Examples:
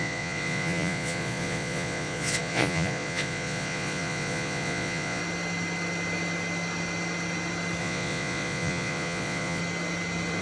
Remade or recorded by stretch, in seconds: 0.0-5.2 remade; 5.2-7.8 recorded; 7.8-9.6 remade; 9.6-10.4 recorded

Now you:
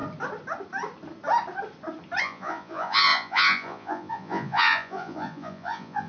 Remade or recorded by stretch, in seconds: 0.0-2.2 recorded; 2.2-6.1 remade

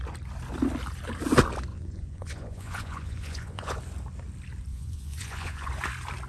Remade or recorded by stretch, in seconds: 0.0-1.7 recorded; 1.7-3.8 remade; 3.8-4.7 recorded; 4.7-5.7 remade; 5.7-6.3 recorded

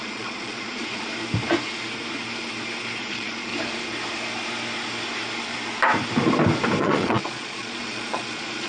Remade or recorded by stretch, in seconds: 0.0-1.1 remade; 1.1-3.0 recorded; 3.0-3.5 remade; 3.5-6.8 recorded; 6.8-8.7 remade

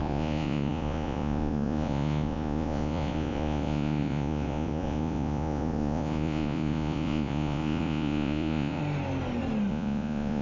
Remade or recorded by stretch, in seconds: 0.0-8.8 remade; 8.8-9.7 recorded; 9.7-10.4 remade

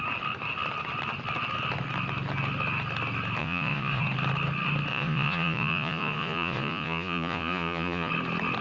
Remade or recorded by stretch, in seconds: 0.0-3.4 recorded; 3.4-4.0 remade; 4.0-4.9 recorded; 4.9-8.1 remade; 8.1-8.6 recorded